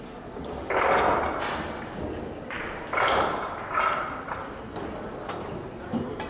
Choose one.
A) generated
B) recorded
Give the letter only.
B